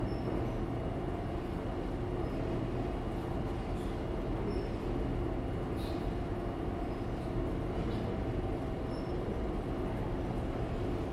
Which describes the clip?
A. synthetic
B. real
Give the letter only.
B